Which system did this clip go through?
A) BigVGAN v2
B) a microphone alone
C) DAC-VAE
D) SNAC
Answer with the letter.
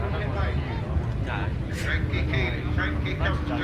B